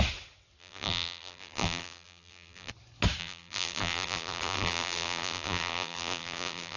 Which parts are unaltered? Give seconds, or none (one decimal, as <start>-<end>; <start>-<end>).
0.0-0.6; 2.7-3.2